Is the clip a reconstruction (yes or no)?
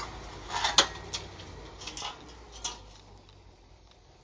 no